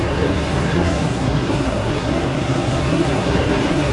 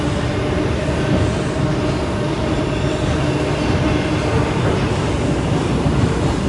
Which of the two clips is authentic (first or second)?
second